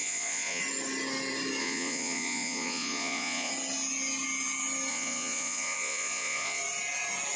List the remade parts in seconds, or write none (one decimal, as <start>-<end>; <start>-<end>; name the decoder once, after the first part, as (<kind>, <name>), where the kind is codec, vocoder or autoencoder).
0.0-0.6 (vocoder, Vocos); 1.6-3.5; 4.9-6.6